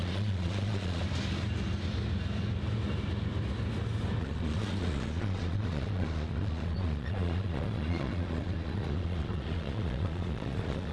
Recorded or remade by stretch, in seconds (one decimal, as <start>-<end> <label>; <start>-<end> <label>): 0.0-1.0 remade; 1.0-4.2 recorded; 4.2-10.9 remade